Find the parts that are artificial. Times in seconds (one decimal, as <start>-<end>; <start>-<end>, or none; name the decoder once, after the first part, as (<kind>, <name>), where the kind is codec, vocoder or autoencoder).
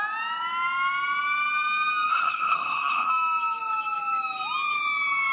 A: 2.1-3.1 (codec, SNAC)